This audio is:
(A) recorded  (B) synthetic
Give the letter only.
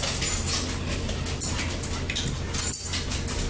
A